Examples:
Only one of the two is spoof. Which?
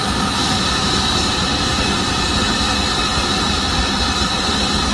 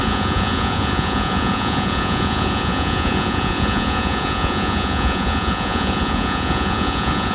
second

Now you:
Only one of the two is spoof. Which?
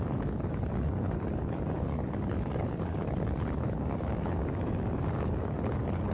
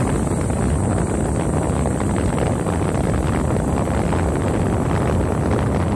first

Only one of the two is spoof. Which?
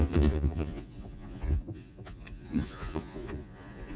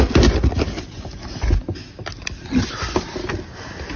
first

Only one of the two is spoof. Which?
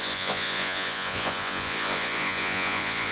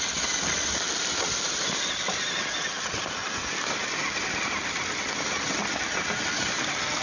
first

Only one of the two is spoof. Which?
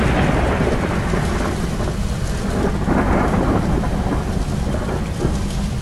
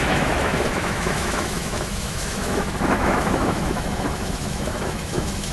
second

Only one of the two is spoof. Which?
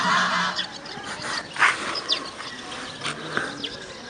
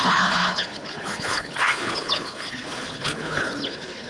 second